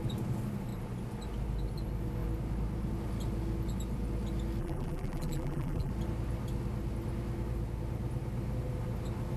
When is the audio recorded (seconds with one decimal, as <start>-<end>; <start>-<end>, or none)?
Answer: 0.0-4.6; 5.9-9.4